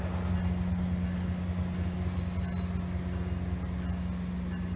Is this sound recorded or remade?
recorded